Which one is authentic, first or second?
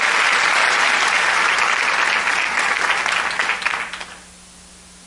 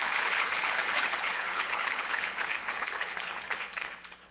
first